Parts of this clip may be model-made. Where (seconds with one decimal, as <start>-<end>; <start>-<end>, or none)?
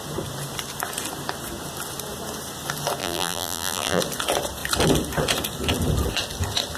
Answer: 3.0-4.0